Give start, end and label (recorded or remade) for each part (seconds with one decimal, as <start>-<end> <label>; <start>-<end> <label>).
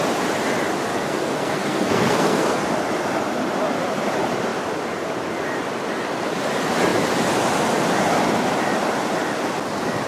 0.0-0.9 recorded; 0.9-2.6 remade; 2.6-10.1 recorded